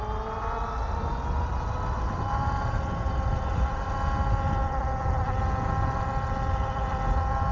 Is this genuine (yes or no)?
yes